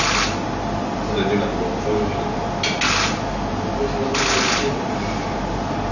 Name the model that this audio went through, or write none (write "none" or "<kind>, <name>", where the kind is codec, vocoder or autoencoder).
none